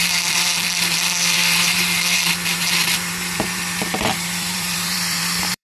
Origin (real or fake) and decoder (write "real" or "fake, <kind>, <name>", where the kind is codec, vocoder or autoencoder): fake, vocoder, BigVGAN v2